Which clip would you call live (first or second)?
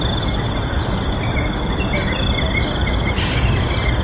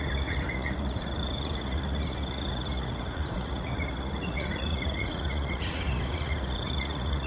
first